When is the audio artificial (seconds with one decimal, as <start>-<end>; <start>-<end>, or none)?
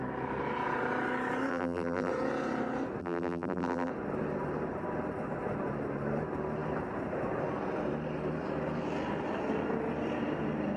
1.5-2.1; 3.0-3.9